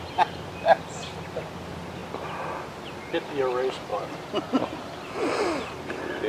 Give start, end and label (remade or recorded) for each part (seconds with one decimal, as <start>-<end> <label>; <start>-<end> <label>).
0.0-6.3 recorded